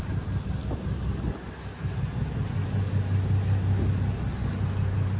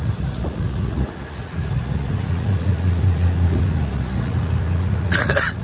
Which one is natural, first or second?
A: first